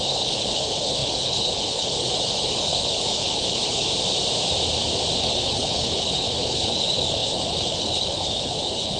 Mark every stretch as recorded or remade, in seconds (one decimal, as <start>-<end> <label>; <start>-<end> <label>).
0.0-3.9 remade; 3.9-5.2 recorded; 5.2-9.0 remade